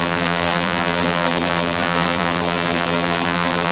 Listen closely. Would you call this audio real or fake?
fake